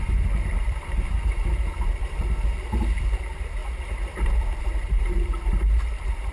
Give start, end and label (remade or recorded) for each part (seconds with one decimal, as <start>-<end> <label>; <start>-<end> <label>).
0.0-2.0 remade; 2.0-3.2 recorded; 3.2-3.6 remade; 3.6-4.6 recorded; 4.6-6.3 remade